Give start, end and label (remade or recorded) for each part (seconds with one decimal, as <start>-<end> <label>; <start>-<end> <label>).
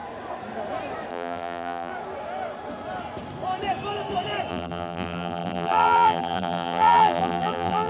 0.0-1.1 recorded; 1.1-1.9 remade; 1.9-4.5 recorded; 4.5-7.9 remade